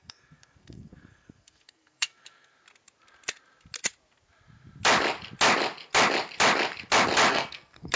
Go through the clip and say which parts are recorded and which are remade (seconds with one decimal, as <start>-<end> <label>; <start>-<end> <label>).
0.0-2.5 remade; 2.5-7.3 recorded; 7.3-8.0 remade